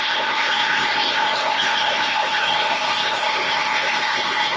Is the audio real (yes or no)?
no